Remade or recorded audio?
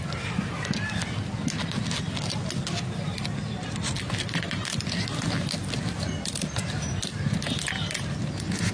recorded